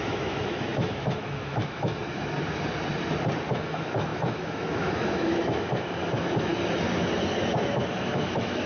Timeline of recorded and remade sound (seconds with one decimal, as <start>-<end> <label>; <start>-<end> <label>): 0.0-2.0 remade; 2.0-3.5 recorded; 3.5-6.5 remade; 6.5-7.4 recorded; 7.4-8.7 remade